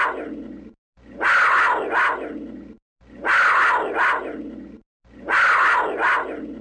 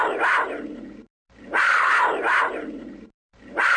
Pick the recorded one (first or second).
first